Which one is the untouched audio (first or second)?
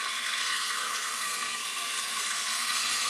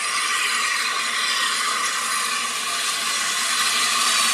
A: second